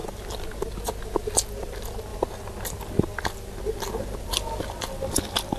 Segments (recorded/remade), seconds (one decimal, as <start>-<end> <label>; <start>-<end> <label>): 0.0-5.6 recorded

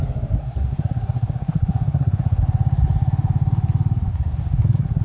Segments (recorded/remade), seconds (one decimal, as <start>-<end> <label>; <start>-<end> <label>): 0.0-0.4 recorded; 0.4-2.4 remade; 2.4-4.1 recorded; 4.1-5.0 remade

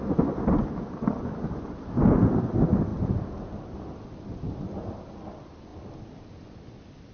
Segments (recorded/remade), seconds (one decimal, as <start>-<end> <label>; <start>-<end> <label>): 0.0-7.1 recorded